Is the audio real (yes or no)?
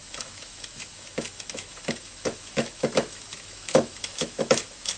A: no